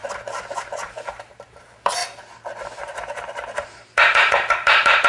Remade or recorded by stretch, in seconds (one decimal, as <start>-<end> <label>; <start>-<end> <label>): 0.0-0.6 recorded; 0.6-2.0 remade; 2.0-2.8 recorded; 2.8-5.1 remade